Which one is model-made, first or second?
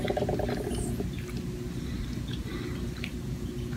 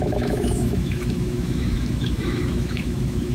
second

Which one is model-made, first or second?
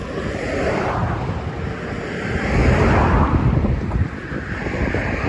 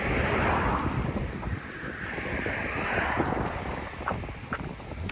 second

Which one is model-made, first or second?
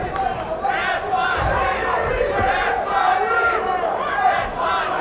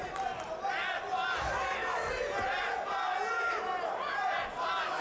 first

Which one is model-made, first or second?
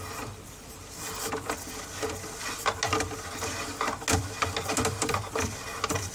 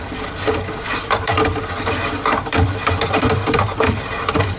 second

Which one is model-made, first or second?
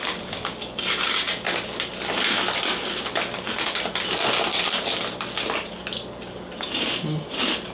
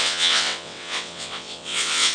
second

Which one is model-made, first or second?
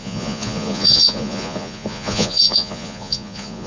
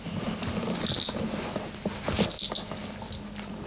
first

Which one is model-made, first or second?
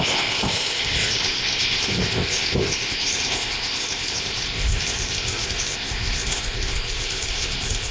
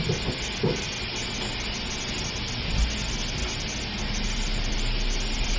first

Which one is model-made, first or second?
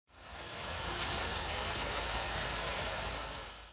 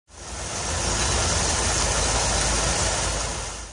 first